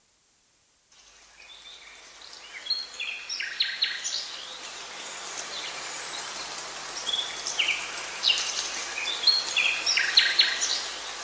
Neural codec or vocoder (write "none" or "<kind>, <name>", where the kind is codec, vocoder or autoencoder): none